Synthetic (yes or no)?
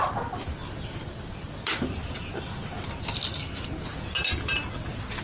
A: no